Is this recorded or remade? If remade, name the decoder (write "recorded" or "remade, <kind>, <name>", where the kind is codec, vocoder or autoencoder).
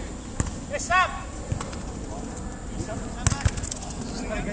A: recorded